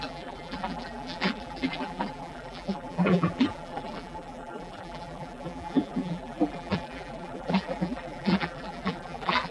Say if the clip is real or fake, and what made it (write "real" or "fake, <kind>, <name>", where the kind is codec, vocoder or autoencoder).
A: fake, vocoder, BigVGAN v2